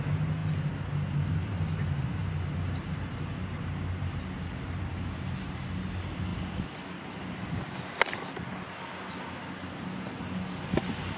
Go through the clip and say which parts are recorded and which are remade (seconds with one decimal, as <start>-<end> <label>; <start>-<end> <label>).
0.0-6.3 recorded; 6.3-7.5 remade; 7.5-11.2 recorded